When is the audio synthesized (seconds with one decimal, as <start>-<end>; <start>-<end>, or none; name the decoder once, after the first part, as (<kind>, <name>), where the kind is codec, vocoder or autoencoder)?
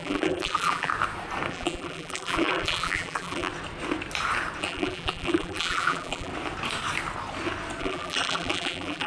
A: 0.0-0.9 (vocoder, BigVGAN v2); 1.5-3.5; 4.6-6.3; 7.8-9.1